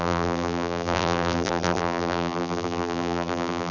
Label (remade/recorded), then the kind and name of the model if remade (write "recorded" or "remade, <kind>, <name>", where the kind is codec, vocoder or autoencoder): remade, vocoder, BigVGAN v2